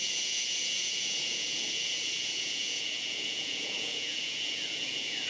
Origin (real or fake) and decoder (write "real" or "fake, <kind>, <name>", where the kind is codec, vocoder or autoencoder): fake, vocoder, Vocos